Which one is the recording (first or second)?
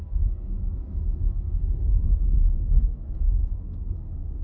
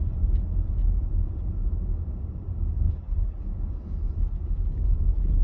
second